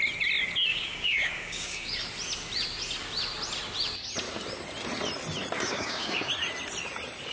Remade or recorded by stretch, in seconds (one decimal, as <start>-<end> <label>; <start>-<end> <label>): 0.0-0.7 recorded; 0.7-1.9 remade; 1.9-5.7 recorded; 5.7-6.3 remade; 6.3-7.3 recorded